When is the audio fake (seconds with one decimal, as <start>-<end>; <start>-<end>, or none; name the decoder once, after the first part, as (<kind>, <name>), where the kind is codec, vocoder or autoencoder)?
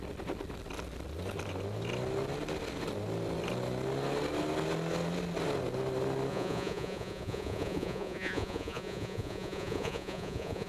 6.3-10.7 (vocoder, Vocos)